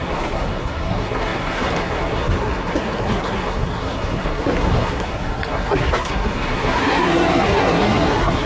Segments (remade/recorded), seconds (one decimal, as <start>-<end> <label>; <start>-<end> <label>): 0.0-8.5 remade